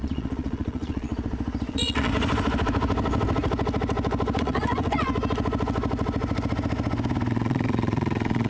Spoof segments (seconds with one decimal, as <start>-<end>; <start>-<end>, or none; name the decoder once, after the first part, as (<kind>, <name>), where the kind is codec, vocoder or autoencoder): 0.0-1.1 (vocoder, Vocos); 1.7-2.1; 4.4-5.1; 7.3-8.5